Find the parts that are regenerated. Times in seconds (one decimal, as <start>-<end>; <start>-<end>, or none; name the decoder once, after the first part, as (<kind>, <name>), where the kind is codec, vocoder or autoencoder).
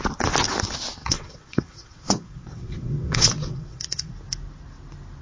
1.0-4.1 (vocoder, WaveNeXt)